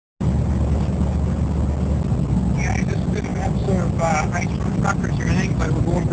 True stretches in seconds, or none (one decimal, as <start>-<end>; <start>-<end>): 0.0-6.1